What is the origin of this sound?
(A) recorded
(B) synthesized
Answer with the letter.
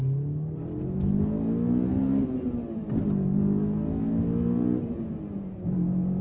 A